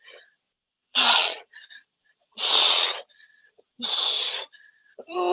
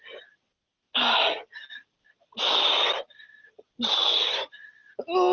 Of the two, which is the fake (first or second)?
first